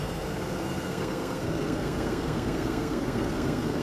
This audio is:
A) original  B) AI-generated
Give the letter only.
B